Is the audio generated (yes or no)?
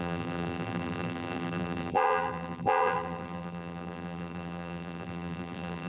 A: yes